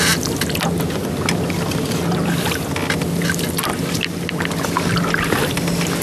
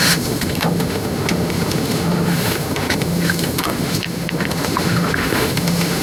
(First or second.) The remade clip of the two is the second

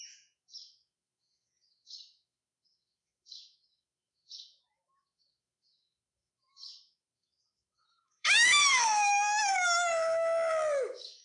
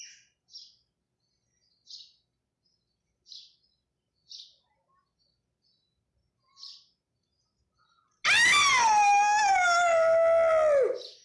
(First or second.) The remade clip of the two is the first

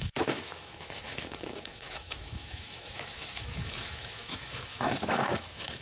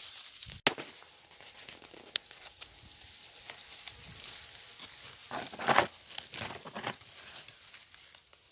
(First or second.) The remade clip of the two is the first